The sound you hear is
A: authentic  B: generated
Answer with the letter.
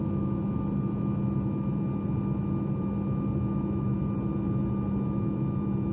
A